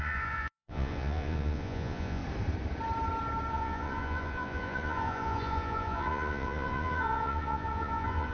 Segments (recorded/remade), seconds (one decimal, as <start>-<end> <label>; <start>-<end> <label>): 0.0-2.2 remade; 2.2-3.5 recorded; 3.5-8.3 remade